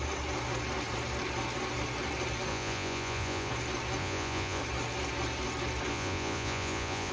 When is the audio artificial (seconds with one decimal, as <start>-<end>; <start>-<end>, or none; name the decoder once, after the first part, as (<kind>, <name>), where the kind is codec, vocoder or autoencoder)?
2.5-3.5 (vocoder, Vocos); 4.0-4.6; 5.9-7.1